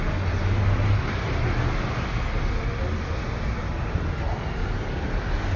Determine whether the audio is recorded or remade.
recorded